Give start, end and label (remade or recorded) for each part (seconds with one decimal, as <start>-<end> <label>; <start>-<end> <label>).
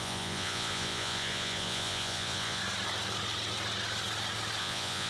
0.0-2.6 remade; 2.6-4.6 recorded; 4.6-5.1 remade